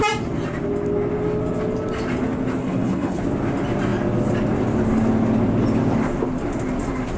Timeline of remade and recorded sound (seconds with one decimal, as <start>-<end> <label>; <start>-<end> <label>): 0.0-2.6 recorded; 2.6-3.2 remade; 3.2-7.2 recorded